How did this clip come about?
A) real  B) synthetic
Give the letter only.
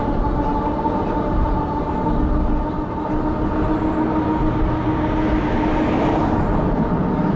A